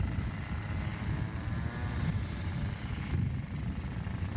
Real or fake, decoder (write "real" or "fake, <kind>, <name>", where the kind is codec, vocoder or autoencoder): real